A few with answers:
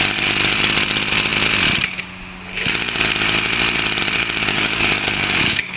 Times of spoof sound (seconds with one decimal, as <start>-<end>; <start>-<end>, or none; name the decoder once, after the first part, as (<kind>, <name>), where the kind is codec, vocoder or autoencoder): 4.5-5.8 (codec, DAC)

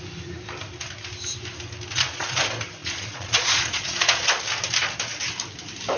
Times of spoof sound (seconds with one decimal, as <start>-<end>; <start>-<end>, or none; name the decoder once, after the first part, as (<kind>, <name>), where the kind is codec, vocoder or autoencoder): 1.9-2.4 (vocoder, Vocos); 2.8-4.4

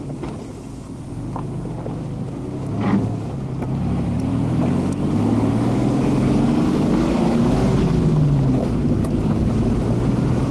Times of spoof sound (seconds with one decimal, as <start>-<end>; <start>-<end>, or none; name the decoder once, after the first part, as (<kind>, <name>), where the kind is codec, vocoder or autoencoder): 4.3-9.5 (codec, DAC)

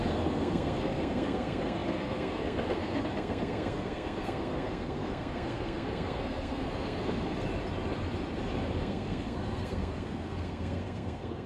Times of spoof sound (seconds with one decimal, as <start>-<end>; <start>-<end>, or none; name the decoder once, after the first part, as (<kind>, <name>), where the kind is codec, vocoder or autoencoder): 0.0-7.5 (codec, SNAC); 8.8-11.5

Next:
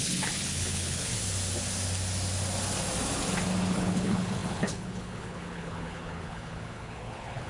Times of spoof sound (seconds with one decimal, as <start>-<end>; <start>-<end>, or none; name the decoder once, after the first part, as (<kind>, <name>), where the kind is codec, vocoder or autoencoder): 0.0-1.1 (codec, HILCodec); 3.7-7.5